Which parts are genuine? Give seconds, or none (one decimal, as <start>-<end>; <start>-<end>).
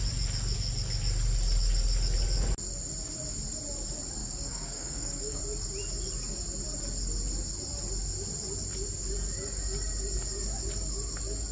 0.0-4.2; 5.4-11.5